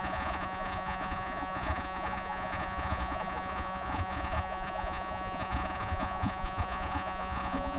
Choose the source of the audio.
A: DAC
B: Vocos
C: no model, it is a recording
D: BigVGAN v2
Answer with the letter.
B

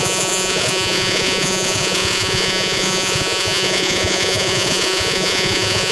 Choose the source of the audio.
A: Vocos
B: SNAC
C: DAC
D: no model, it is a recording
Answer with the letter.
A